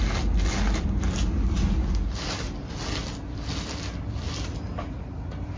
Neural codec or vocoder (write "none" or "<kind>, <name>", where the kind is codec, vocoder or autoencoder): none